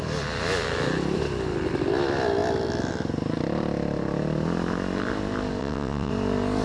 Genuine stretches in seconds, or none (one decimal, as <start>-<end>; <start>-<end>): 0.0-5.6; 6.1-6.6